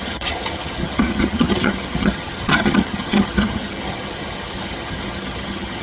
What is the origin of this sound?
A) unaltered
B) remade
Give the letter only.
B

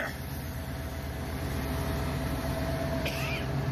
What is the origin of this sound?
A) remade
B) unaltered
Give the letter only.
A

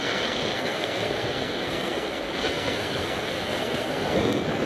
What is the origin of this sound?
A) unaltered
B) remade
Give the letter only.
B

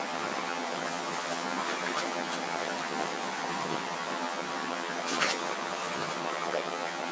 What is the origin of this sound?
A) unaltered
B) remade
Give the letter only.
B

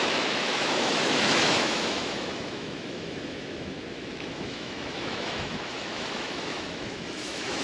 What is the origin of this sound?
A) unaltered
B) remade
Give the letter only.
B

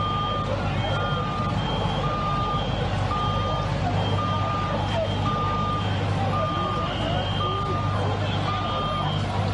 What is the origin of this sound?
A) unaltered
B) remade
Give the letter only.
A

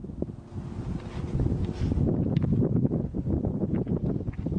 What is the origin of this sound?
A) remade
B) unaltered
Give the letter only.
B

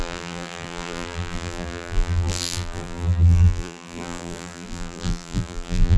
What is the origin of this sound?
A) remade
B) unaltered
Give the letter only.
A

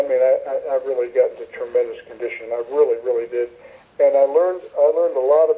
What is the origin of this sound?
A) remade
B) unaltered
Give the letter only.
B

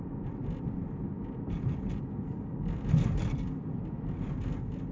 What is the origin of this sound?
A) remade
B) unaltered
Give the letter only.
B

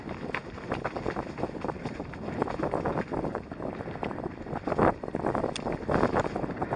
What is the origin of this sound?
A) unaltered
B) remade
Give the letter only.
A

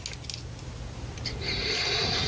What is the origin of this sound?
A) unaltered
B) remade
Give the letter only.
A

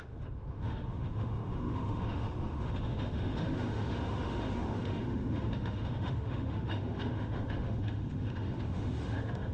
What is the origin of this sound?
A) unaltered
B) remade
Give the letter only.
B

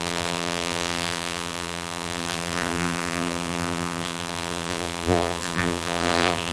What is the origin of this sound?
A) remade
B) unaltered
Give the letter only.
A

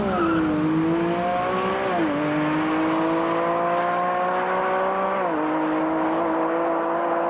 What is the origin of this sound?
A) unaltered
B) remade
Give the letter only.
A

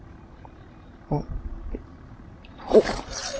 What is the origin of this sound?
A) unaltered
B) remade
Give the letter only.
B